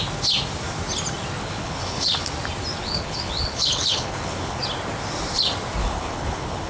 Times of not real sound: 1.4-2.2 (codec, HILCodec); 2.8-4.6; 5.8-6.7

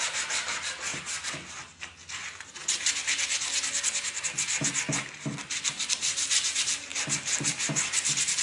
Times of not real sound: 0.0-0.9 (vocoder, BigVGAN v2); 5.5-8.4

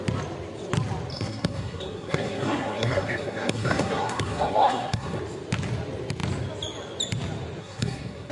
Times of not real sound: 1.1-5.2 (codec, SNAC); 7.6-8.3

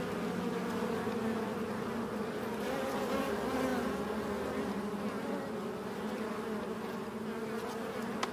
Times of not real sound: none

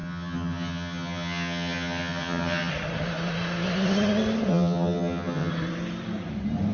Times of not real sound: 0.0-2.7 (vocoder, HiFi-GAN); 4.5-5.5

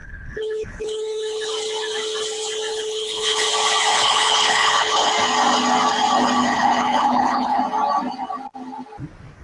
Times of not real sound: 0.0-1.5 (codec, HILCodec); 2.7-3.5; 3.9-5.1; 6.4-7.6

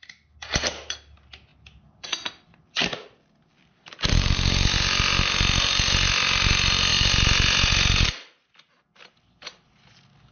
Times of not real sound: none

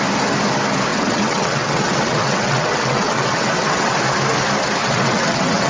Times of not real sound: 0.9-4.0 (vocoder, WaveNeXt); 4.8-5.7